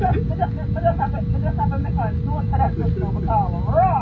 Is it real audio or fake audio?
real